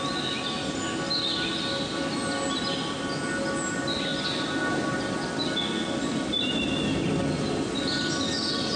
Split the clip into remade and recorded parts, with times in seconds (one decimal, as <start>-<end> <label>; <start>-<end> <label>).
0.0-8.8 recorded